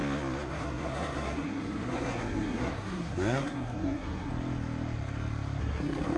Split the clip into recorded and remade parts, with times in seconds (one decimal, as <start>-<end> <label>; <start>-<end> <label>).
0.0-0.5 recorded; 0.5-4.3 remade; 4.3-5.6 recorded; 5.6-6.2 remade